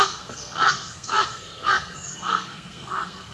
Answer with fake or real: fake